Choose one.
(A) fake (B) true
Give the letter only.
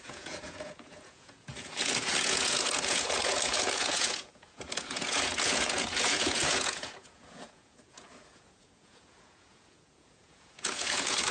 A